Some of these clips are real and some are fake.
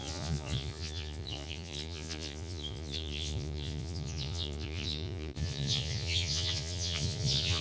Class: fake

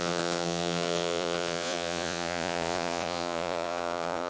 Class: fake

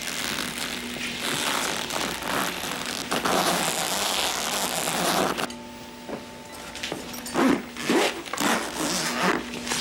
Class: real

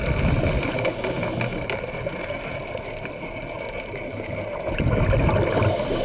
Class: real